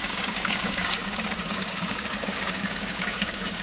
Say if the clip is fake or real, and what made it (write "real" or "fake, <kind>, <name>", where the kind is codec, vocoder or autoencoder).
fake, codec, DAC